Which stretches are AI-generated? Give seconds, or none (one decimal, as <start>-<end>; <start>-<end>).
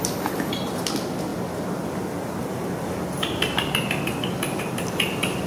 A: none